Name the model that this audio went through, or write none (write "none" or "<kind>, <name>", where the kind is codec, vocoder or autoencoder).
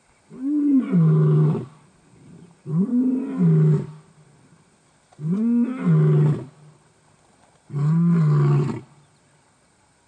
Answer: none